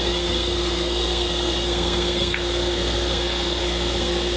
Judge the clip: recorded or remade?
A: remade